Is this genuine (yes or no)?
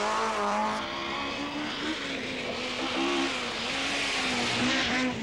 yes